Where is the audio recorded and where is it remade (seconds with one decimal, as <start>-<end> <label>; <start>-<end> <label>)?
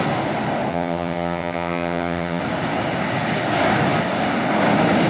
0.0-0.7 recorded; 0.7-2.4 remade; 2.4-5.1 recorded